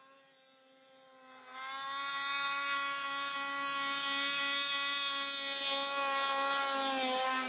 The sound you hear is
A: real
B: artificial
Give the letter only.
A